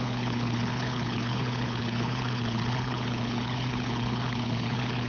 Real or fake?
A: fake